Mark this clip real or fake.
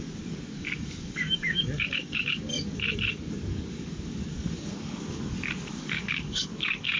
fake